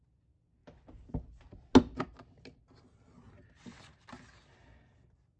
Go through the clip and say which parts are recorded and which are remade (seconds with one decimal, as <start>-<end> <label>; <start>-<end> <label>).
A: 0.0-5.4 recorded